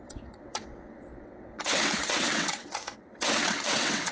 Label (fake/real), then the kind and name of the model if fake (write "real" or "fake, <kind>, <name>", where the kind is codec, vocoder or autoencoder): fake, vocoder, WaveNeXt